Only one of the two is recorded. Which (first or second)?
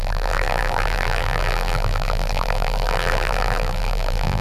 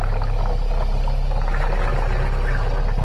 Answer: second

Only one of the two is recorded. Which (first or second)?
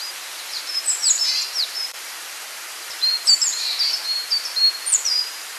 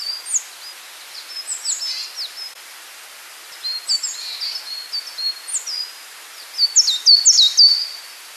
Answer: second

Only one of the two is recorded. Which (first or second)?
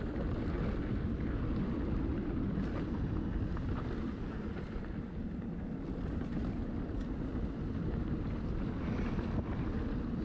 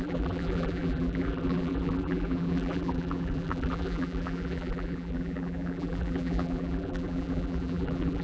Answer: first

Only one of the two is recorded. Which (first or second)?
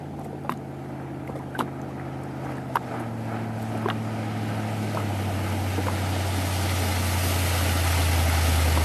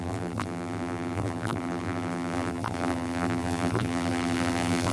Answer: first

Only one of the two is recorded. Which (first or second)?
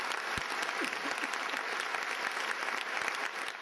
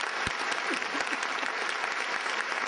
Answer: first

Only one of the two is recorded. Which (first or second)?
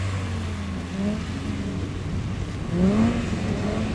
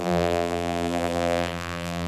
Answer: first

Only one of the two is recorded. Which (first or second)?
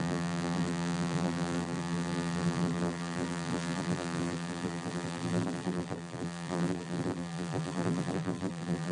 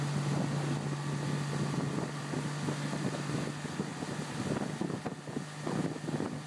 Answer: second